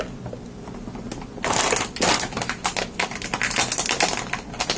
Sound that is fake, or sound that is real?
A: real